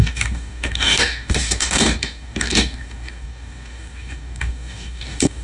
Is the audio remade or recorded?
remade